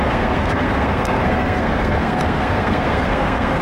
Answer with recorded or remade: remade